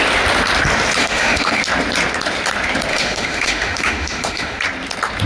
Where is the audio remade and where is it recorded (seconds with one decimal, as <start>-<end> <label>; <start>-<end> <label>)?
0.0-1.0 recorded; 1.0-1.6 remade; 1.6-2.9 recorded; 2.9-4.6 remade; 4.6-5.3 recorded

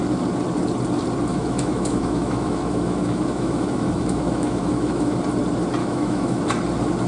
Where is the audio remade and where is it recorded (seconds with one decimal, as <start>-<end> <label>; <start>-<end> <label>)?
0.0-1.3 recorded; 1.3-5.2 remade; 5.2-5.8 recorded; 5.8-6.4 remade; 6.4-7.1 recorded

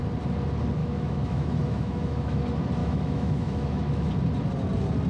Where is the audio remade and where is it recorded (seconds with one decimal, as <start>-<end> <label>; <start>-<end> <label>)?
0.0-0.8 recorded; 0.8-2.4 remade; 2.4-2.8 recorded; 2.8-4.1 remade; 4.1-5.1 recorded

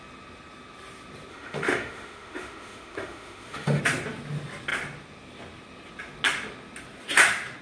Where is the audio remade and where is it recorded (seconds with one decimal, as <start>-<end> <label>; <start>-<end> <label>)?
0.0-1.3 recorded; 1.3-3.8 remade; 3.8-7.6 recorded